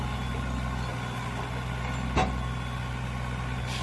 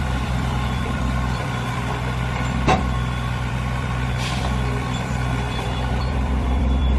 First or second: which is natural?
first